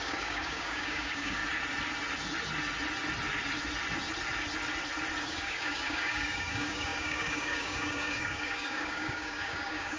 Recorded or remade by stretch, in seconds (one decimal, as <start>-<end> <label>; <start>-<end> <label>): 0.0-1.4 remade; 1.4-5.2 recorded; 5.2-10.0 remade